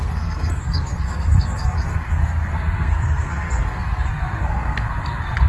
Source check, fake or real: fake